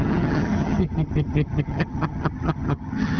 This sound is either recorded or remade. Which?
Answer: remade